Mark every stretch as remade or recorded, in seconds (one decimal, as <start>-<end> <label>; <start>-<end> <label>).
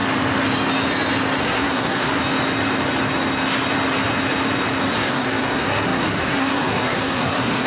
0.0-1.4 recorded; 1.4-2.2 remade; 2.2-4.9 recorded; 4.9-7.7 remade